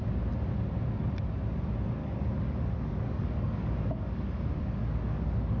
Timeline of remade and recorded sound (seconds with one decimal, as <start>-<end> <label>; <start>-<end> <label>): 0.0-2.0 recorded; 2.0-5.6 remade